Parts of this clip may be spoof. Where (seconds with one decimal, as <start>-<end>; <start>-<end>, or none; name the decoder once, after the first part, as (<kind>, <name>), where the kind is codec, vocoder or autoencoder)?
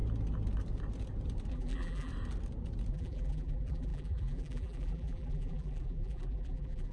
1.5-2.1 (vocoder, BigVGAN v2); 2.9-6.9